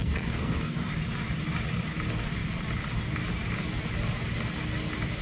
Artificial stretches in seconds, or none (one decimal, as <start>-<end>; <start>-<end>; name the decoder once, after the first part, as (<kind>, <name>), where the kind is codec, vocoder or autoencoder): 0.0-0.9 (codec, SNAC)